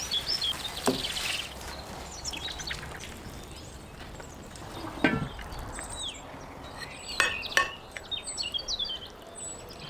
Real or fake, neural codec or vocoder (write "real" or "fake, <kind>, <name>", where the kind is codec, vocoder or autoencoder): real